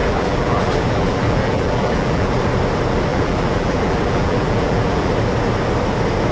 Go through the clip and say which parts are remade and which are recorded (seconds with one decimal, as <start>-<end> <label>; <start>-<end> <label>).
0.0-2.4 remade; 2.4-3.1 recorded; 3.1-5.1 remade; 5.1-6.3 recorded